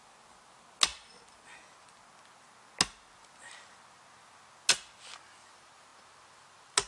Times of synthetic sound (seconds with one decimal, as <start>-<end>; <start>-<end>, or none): none